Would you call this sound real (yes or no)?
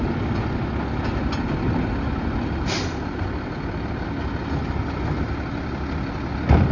yes